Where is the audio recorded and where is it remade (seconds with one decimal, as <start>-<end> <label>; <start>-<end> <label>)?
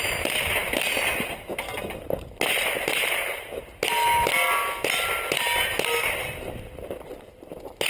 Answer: 0.0-7.9 recorded